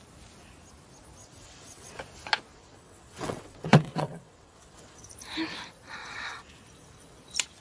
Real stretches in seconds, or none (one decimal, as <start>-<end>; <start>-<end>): 0.0-1.2; 1.9-2.5; 5.1-6.0; 6.5-7.6